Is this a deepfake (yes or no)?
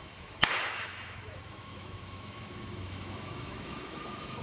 yes